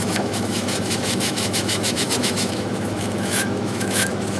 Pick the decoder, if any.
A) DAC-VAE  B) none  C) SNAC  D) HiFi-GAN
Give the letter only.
A